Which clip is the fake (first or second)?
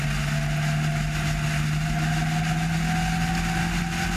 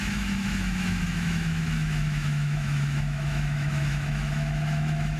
second